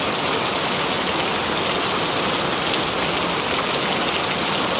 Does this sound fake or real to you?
real